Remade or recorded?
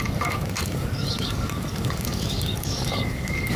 remade